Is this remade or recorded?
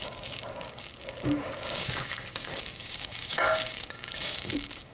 remade